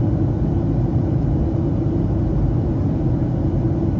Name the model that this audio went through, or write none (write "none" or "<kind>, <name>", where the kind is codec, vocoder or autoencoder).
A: none